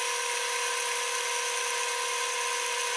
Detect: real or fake real